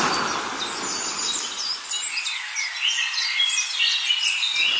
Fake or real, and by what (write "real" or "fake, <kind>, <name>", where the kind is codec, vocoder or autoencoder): real